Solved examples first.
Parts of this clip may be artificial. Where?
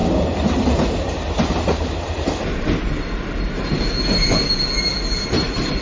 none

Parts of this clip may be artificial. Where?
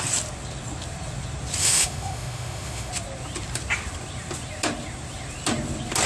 1.6-2.9 (autoencoder, DAC-VAE)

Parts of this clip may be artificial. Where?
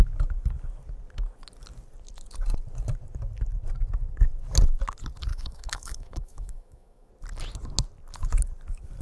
5.3-7.1 (autoencoder, DAC-VAE)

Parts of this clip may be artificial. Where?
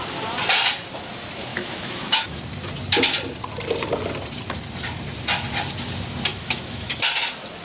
1.5-2.4 (autoencoder, DAC-VAE); 6.3-7.0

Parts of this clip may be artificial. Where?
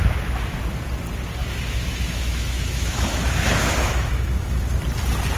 1.4-4.6 (autoencoder, DAC-VAE)